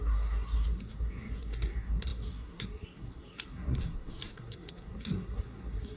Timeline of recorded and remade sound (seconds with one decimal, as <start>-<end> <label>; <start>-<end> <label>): 0.0-6.0 remade